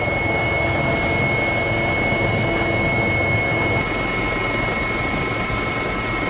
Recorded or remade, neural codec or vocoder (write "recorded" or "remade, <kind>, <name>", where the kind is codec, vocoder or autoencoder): recorded